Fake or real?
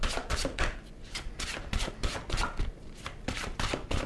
fake